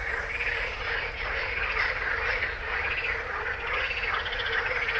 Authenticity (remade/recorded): recorded